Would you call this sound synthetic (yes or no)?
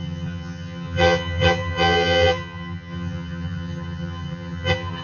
yes